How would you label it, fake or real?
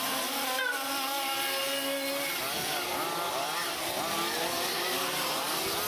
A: real